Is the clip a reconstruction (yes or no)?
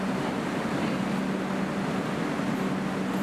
no